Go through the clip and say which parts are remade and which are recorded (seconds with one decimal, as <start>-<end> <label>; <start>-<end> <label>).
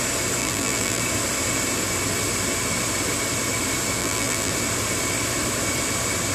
0.0-0.4 recorded; 0.4-1.0 remade; 1.0-4.0 recorded; 4.0-4.5 remade; 4.5-6.3 recorded